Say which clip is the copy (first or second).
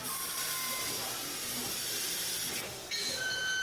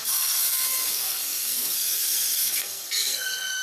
second